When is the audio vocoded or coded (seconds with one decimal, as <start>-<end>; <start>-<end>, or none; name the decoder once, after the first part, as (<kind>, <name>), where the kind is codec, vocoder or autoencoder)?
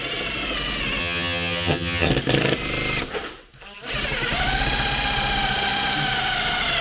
1.0-2.1 (vocoder, HiFi-GAN)